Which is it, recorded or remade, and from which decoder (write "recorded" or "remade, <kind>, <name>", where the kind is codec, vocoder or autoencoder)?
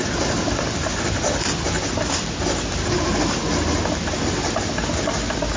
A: recorded